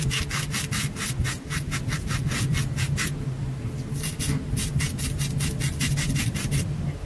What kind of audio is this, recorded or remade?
recorded